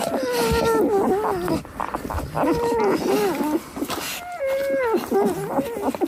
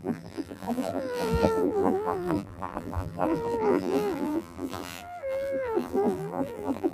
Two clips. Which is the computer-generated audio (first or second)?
second